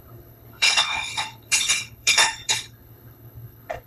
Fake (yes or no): yes